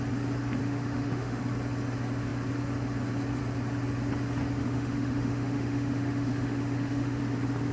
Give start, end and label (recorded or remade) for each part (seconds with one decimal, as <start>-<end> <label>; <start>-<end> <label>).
0.0-0.6 recorded; 0.6-1.4 remade; 1.4-4.6 recorded; 4.6-7.2 remade; 7.2-7.7 recorded